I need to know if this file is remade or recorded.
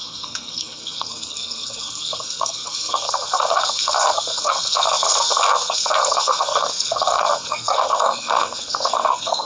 remade